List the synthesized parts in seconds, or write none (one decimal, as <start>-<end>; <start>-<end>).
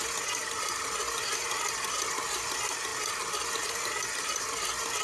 none